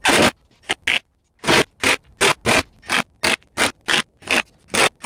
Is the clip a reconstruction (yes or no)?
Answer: no